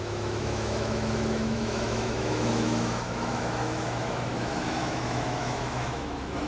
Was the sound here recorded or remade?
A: remade